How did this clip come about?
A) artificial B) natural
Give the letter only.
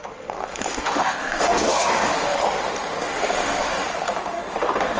A